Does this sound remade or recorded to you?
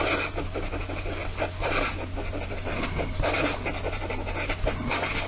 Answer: recorded